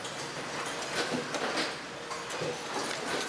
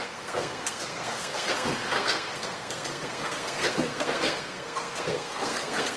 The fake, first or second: second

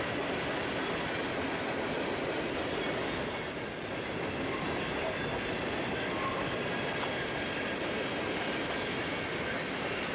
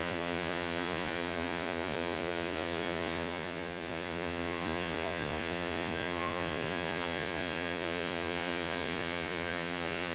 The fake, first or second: second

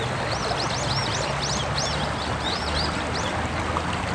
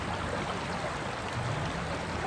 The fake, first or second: second